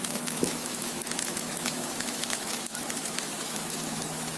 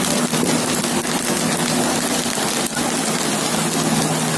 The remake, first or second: first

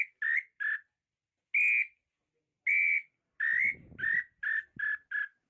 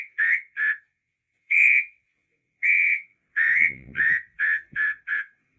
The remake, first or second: second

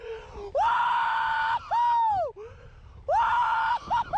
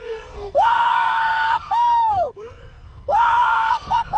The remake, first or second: second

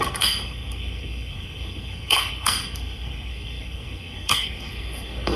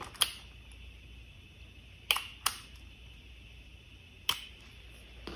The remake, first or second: first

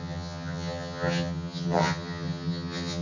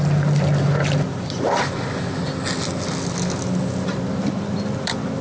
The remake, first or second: first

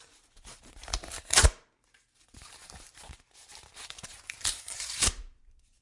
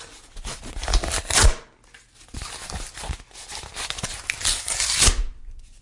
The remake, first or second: first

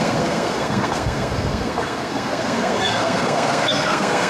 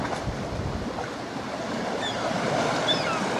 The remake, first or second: first